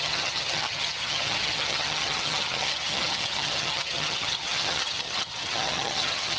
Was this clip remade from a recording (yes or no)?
yes